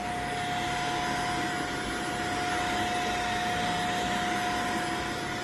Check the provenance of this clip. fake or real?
real